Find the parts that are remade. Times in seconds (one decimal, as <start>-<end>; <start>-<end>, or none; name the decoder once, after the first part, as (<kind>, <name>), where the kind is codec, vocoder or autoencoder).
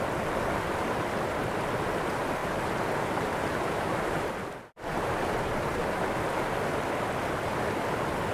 2.4-4.2 (vocoder, BigVGAN v2); 4.9-5.8